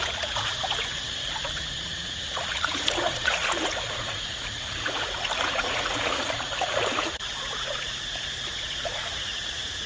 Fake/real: fake